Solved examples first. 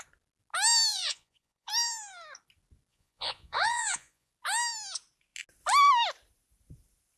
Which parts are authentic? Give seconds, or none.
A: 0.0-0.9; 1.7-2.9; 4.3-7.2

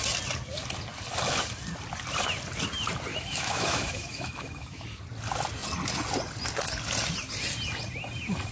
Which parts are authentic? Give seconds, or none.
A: 0.0-3.1; 5.0-8.5

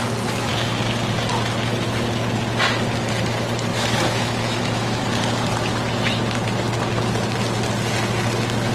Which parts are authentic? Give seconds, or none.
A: 0.0-3.7; 5.0-8.7

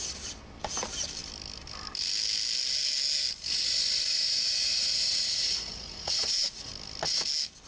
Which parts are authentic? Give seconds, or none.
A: 0.0-4.1; 6.7-7.7

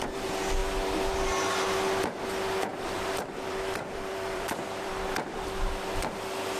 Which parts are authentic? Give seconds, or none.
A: 0.0-2.7; 4.9-6.6